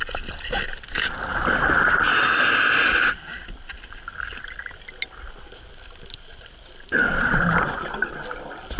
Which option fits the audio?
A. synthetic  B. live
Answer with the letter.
B